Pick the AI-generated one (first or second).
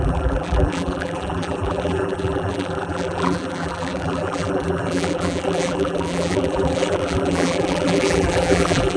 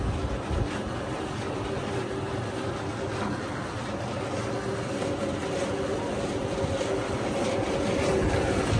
first